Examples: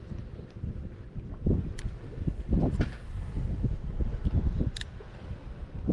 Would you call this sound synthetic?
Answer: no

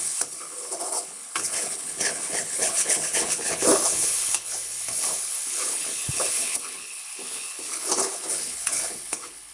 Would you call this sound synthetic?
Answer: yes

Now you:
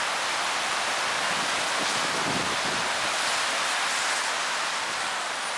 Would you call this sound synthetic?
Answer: no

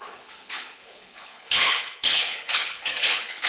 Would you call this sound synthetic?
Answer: yes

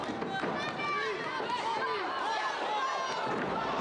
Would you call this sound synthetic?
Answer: no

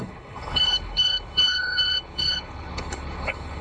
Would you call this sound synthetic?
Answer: yes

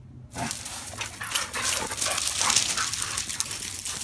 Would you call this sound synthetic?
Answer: no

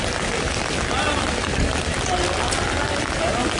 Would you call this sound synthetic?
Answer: no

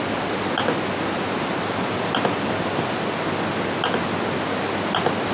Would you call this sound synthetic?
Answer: no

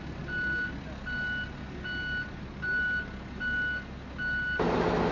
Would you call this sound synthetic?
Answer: no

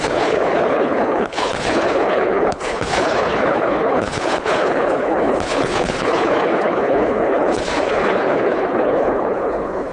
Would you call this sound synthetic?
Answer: yes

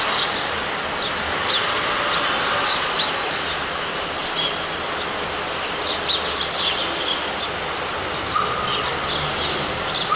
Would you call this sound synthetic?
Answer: no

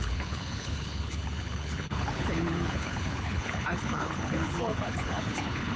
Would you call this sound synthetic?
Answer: yes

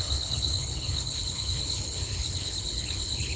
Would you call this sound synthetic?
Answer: yes